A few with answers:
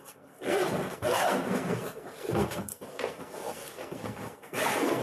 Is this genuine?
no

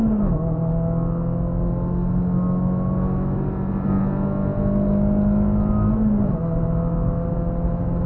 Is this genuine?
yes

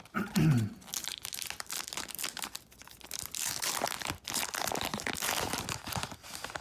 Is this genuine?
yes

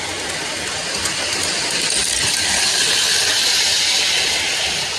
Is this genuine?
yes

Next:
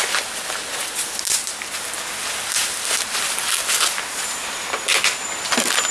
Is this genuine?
yes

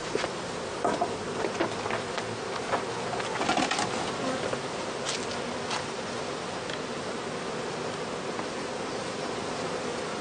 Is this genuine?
yes